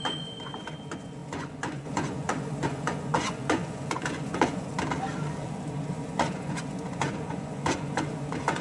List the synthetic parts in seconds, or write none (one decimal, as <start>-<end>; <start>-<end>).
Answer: 0.0-4.7; 5.9-8.6